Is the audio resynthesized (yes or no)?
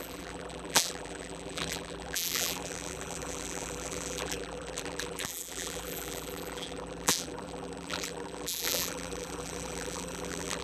yes